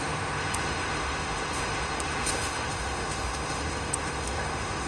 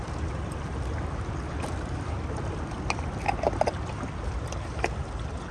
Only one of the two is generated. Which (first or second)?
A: first